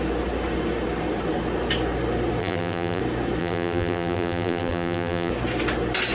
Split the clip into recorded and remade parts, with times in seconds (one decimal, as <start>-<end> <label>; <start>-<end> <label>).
0.0-2.4 recorded; 2.4-3.0 remade; 3.0-3.4 recorded; 3.4-5.3 remade; 5.3-6.1 recorded